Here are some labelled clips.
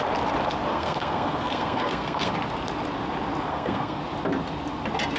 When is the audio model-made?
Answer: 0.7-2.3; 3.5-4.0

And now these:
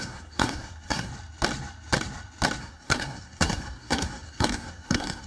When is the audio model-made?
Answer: 0.0-1.1; 2.6-5.3

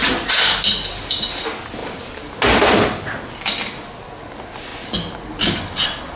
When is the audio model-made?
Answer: none

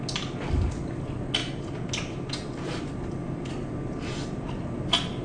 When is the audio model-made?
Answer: none

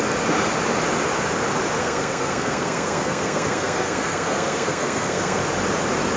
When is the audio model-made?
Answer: 1.8-5.4